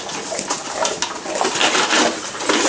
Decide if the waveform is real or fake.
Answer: real